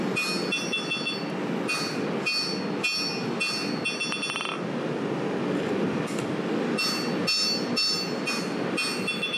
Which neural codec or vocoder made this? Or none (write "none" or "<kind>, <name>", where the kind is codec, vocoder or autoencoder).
none